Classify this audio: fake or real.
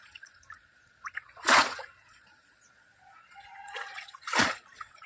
fake